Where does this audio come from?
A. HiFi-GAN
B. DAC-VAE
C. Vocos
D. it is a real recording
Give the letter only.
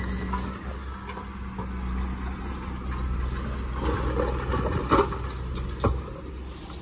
D